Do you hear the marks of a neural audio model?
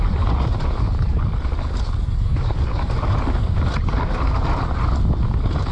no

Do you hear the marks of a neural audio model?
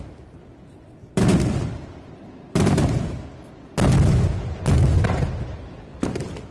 no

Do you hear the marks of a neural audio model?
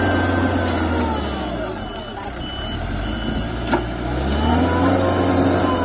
no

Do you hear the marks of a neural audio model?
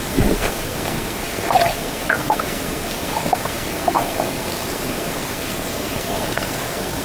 yes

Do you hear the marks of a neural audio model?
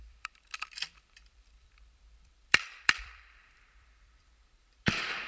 yes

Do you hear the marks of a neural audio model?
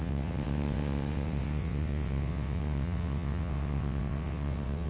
yes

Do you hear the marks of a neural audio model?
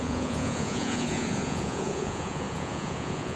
yes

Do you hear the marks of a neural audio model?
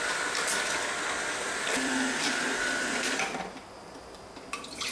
yes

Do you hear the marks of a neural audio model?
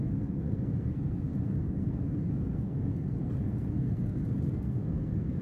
yes